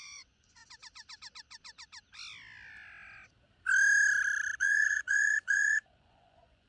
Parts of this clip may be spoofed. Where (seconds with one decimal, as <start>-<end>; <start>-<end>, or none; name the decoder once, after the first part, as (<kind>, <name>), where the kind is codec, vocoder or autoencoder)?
0.0-0.6 (vocoder, Vocos); 4.6-6.7